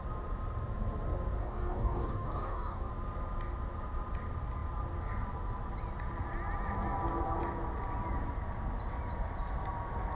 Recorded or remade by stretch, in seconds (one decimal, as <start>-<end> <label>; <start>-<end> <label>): 0.0-1.4 recorded; 1.4-2.9 remade; 2.9-10.1 recorded